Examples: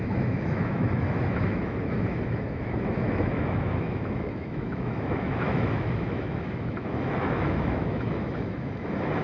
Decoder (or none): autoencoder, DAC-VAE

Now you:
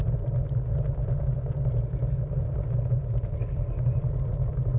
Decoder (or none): none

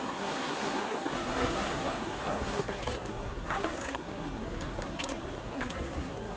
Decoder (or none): codec, SNAC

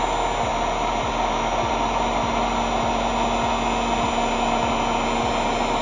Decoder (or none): none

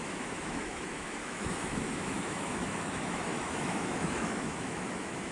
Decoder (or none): autoencoder, DAC-VAE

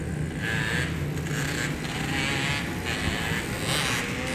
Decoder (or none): none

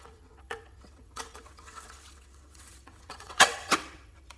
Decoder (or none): vocoder, WaveNeXt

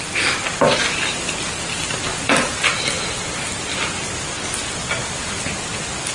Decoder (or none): none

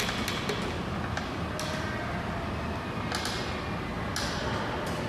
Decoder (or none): none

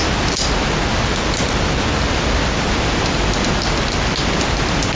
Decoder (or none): none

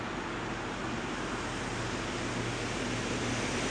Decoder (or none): none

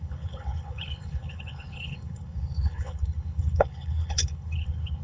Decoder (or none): codec, HILCodec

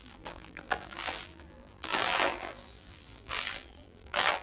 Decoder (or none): vocoder, BigVGAN v2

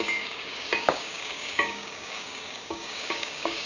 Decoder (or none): codec, DAC